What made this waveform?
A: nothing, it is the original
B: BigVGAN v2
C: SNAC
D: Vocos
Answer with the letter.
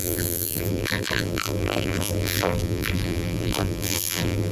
B